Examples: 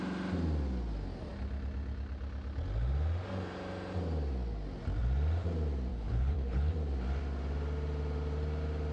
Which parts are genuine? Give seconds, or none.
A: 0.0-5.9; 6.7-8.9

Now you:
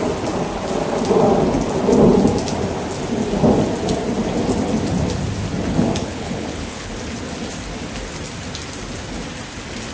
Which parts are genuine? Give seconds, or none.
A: 0.0-6.0; 6.9-9.9

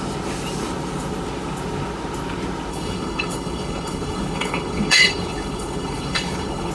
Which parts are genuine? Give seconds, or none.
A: 0.0-2.7

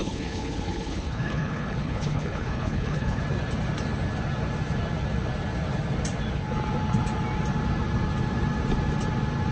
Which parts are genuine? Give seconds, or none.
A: 3.2-9.5